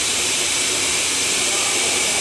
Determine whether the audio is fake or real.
fake